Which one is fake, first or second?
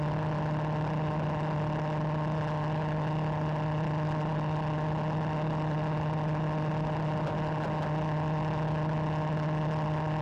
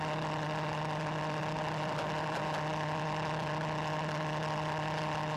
second